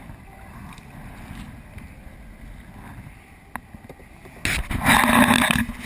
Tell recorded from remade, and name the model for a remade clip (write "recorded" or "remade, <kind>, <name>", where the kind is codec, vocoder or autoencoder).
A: recorded